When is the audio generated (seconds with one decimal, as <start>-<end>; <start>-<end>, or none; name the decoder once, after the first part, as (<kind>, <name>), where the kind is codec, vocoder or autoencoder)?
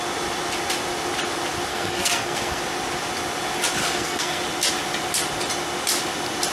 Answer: 1.7-2.6 (codec, SNAC); 3.8-4.4